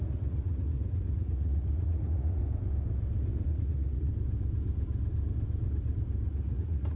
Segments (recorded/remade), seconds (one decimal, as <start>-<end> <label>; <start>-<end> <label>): 0.0-2.4 remade; 2.4-3.5 recorded; 3.5-4.1 remade; 4.1-6.3 recorded; 6.3-7.0 remade